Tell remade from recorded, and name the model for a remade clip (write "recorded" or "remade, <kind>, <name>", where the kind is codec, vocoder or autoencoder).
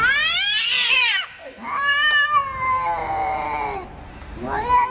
remade, vocoder, BigVGAN v2